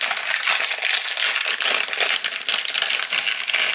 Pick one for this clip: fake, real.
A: real